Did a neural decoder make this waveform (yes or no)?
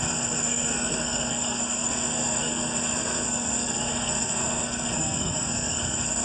yes